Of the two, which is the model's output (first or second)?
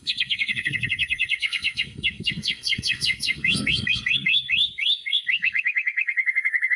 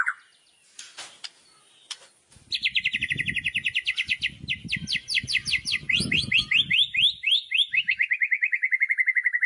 first